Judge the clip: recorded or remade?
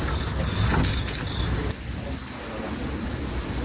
recorded